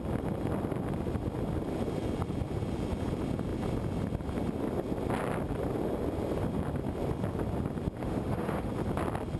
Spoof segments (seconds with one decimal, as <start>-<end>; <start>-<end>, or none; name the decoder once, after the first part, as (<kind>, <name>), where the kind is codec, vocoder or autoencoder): 8.0-8.7 (autoencoder, DAC-VAE)